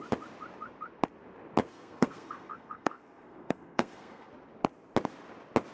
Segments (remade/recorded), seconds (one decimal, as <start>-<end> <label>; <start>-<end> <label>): 0.0-1.7 recorded; 1.7-4.3 remade; 4.3-5.7 recorded